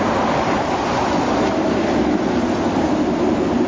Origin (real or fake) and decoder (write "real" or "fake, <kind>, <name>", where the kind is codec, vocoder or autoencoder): real